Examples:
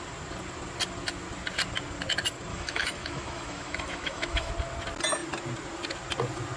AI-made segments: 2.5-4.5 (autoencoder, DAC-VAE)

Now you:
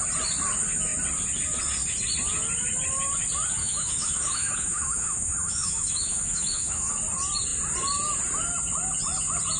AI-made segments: 3.6-6.9 (autoencoder, DAC-VAE)

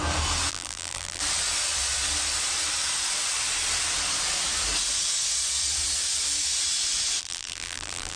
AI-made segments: 0.5-1.2 (vocoder, BigVGAN v2); 7.2-8.2

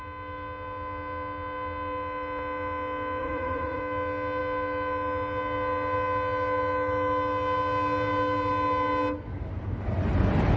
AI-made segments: 3.2-3.8 (vocoder, Vocos)

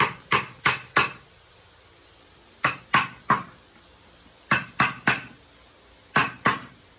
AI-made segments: 6.2-7.0 (vocoder, BigVGAN v2)

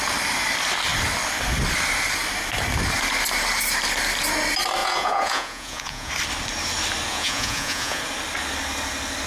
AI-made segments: 4.8-6.1 (vocoder, Vocos); 7.1-8.0

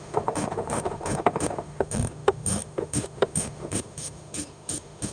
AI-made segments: 0.0-5.1 (autoencoder, DAC-VAE)